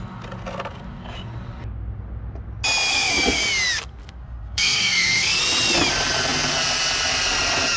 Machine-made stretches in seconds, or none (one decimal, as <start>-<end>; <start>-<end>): 2.9-3.4; 4.0-5.4